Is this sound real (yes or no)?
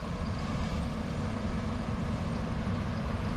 yes